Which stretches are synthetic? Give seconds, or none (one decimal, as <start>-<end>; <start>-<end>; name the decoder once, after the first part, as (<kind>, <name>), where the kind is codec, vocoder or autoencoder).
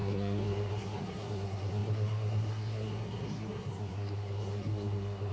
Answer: 0.0-5.3 (codec, SNAC)